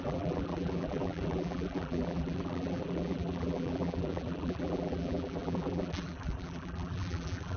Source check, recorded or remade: remade